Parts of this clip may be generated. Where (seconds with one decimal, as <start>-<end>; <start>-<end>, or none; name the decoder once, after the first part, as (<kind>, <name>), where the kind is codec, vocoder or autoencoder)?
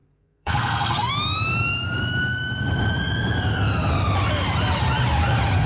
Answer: 0.0-1.1 (codec, SNAC)